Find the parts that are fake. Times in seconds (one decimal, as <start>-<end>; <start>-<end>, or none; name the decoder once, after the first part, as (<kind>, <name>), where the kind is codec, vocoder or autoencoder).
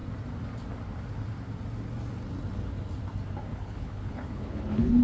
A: 3.5-5.0 (codec, HILCodec)